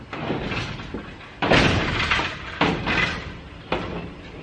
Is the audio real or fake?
real